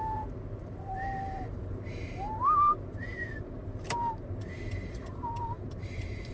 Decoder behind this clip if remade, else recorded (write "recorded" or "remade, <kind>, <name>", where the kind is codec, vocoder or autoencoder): remade, vocoder, BigVGAN v2